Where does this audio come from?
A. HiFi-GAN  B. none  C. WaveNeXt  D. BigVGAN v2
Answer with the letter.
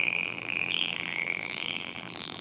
D